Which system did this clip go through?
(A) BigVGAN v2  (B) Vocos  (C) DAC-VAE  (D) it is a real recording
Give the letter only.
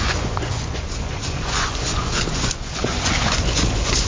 B